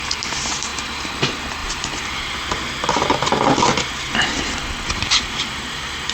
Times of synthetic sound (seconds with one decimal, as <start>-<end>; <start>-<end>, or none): 0.0-3.3; 4.9-6.1